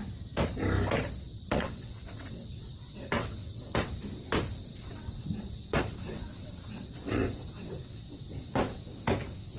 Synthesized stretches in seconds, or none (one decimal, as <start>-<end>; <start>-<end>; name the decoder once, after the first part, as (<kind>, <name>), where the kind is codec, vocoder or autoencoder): 1.3-4.0 (vocoder, WaveNeXt); 4.7-8.8